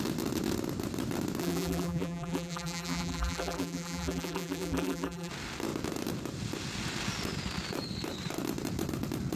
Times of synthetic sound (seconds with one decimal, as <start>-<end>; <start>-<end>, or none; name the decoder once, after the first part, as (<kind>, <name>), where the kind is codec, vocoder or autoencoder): 1.4-5.3 (vocoder, BigVGAN v2)